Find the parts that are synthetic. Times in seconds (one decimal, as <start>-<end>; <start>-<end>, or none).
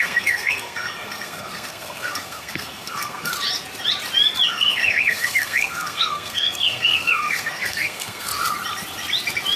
0.0-3.3; 4.5-8.3